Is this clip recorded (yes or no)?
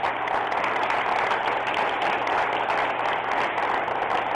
yes